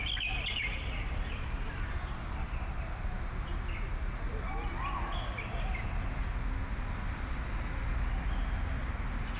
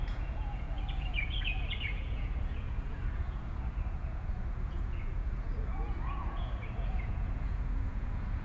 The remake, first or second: second